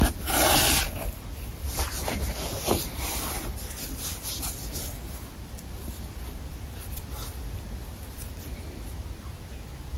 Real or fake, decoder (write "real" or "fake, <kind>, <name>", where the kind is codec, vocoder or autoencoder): fake, vocoder, BigVGAN v2